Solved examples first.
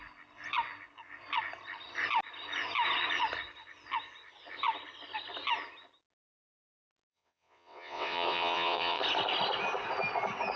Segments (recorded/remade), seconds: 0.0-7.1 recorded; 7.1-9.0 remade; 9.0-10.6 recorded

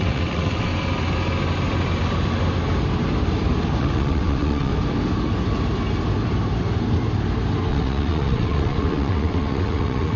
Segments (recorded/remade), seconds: 0.0-0.7 remade; 0.7-3.8 recorded; 3.8-4.7 remade; 4.7-7.7 recorded; 7.7-10.2 remade

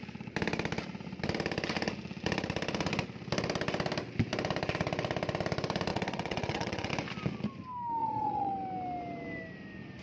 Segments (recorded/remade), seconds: 0.0-5.9 recorded; 5.9-6.9 remade; 6.9-8.0 recorded; 8.0-8.5 remade; 8.5-10.0 recorded

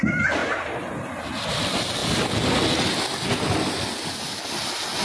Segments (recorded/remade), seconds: 0.0-5.0 recorded

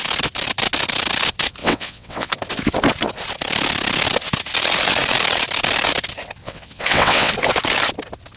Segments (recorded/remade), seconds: 0.0-1.6 recorded; 1.6-2.3 remade; 2.3-6.4 recorded; 6.4-7.3 remade; 7.3-8.4 recorded

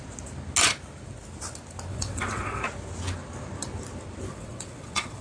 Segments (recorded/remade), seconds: 0.0-1.9 recorded; 1.9-2.6 remade; 2.6-4.3 recorded; 4.3-5.2 remade

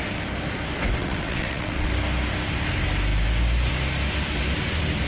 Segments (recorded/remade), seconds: 0.0-1.0 recorded; 1.0-1.9 remade; 1.9-5.1 recorded